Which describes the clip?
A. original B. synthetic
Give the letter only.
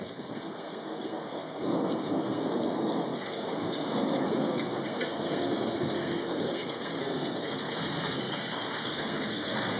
B